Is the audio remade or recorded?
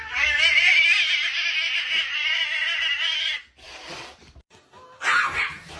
recorded